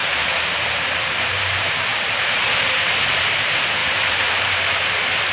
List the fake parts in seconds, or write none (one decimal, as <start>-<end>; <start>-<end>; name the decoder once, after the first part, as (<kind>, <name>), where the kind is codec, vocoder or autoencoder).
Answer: 1.1-5.3 (vocoder, BigVGAN v2)